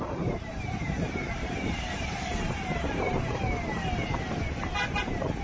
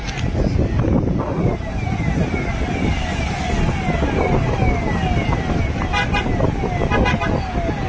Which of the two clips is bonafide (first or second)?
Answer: second